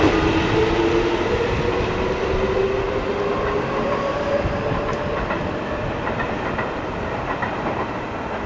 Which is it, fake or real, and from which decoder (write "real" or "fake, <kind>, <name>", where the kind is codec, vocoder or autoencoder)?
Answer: real